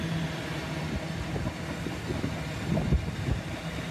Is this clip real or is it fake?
fake